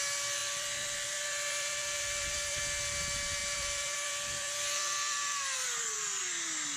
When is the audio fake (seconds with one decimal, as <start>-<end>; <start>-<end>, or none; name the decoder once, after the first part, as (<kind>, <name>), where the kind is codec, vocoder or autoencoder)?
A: 0.4-2.6 (vocoder, BigVGAN v2); 3.4-6.2